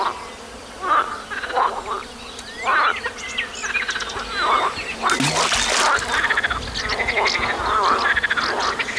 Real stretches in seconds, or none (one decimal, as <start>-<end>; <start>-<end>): 0.0-9.0